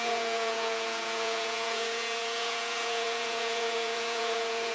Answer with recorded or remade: remade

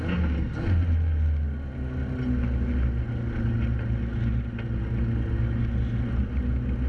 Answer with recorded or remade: recorded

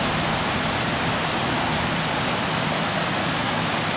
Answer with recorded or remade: recorded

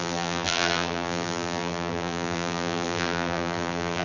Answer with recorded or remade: remade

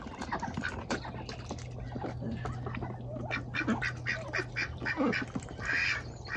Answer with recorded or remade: recorded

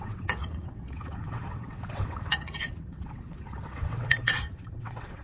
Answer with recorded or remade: remade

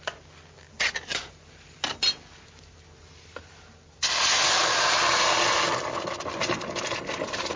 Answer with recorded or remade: recorded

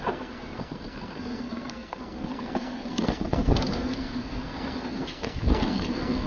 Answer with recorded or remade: remade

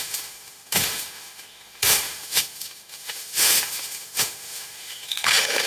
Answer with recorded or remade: remade